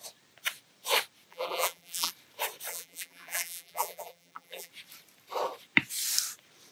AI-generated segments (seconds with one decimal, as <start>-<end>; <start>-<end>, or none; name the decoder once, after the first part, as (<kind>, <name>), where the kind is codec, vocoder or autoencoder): 1.3-2.1 (vocoder, BigVGAN v2); 2.7-4.7